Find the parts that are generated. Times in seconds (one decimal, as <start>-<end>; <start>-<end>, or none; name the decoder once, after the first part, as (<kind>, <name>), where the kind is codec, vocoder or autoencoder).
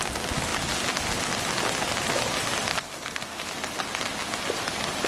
2.7-3.4 (codec, SNAC)